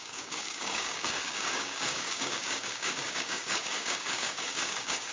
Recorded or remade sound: remade